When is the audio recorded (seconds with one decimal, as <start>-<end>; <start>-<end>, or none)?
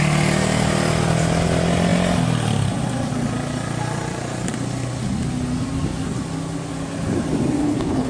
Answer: 0.0-7.6